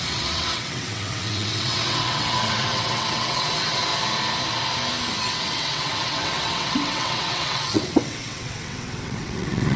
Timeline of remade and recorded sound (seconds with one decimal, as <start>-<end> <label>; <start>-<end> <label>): 0.0-3.9 remade; 3.9-5.2 recorded; 5.2-9.8 remade